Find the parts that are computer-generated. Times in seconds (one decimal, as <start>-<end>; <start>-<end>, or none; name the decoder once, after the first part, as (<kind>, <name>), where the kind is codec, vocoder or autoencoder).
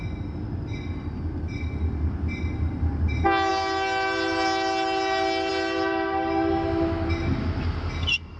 none